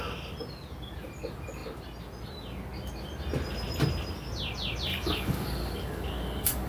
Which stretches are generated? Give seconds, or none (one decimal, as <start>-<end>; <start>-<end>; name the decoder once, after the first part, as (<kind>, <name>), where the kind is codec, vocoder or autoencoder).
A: 4.9-6.7 (codec, DAC)